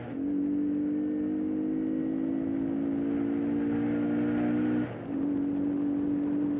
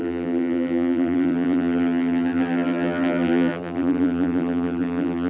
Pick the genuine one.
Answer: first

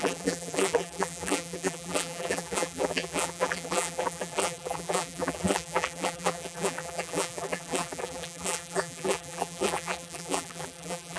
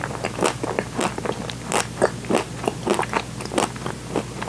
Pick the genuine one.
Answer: second